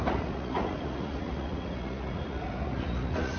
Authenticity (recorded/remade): remade